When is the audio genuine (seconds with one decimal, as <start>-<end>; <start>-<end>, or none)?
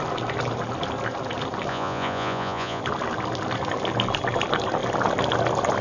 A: 0.0-1.7; 2.8-5.8